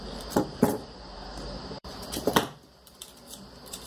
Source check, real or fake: fake